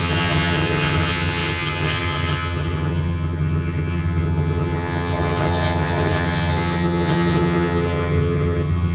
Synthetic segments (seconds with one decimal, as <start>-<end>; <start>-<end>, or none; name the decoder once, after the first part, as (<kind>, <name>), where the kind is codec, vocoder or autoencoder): 0.0-8.9 (vocoder, HiFi-GAN)